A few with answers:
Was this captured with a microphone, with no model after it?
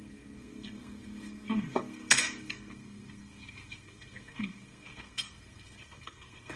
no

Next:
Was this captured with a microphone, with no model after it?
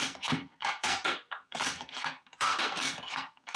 no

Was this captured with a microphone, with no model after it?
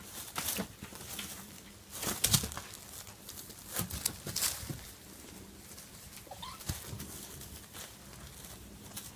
yes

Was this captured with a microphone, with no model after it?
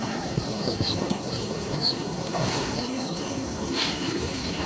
no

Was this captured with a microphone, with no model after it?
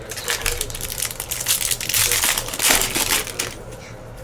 yes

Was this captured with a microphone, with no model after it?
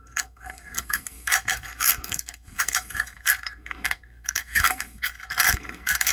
no